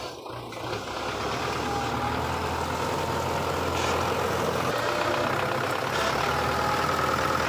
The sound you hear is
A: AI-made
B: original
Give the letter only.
B